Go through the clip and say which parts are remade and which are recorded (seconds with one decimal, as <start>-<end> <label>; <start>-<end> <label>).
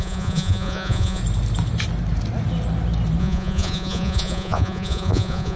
0.0-1.2 remade; 1.2-3.2 recorded; 3.2-5.6 remade